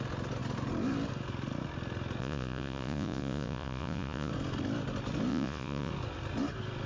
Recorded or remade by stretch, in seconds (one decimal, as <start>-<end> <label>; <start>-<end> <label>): 0.0-2.2 recorded; 2.2-4.3 remade; 4.3-5.3 recorded; 5.3-5.9 remade; 5.9-6.9 recorded